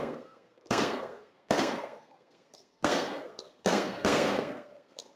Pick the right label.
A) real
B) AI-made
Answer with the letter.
B